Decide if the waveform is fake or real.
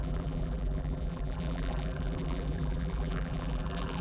fake